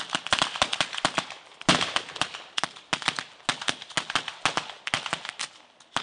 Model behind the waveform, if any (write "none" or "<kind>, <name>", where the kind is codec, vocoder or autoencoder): none